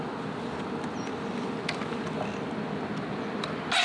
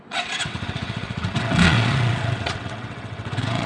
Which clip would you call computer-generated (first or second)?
second